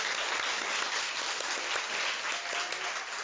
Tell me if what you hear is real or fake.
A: real